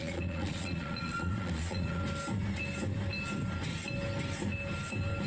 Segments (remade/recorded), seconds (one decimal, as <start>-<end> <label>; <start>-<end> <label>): 0.0-2.0 remade; 2.0-5.3 recorded